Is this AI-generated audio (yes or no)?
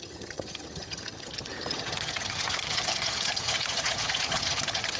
yes